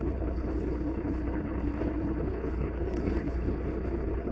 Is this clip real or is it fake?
fake